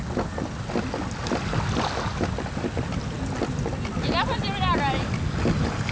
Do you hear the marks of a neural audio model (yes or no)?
no